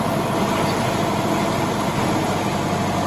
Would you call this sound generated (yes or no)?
no